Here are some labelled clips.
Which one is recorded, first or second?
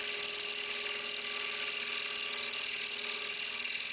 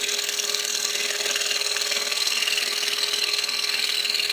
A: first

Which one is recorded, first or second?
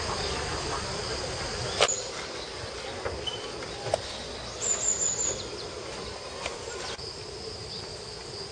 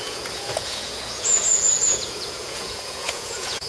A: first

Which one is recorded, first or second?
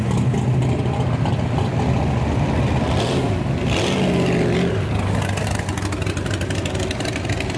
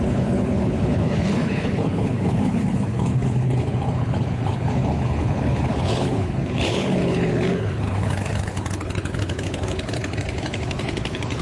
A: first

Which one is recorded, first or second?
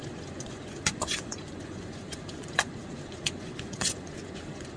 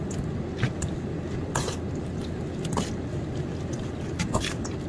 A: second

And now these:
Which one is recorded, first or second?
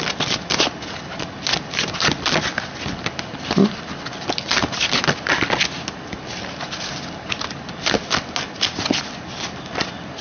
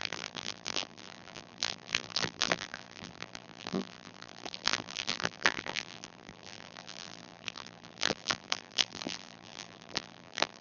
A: first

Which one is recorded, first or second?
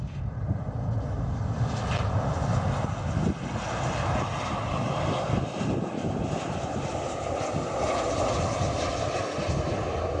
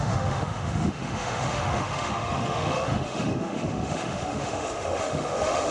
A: first